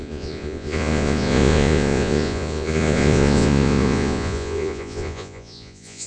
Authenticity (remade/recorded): remade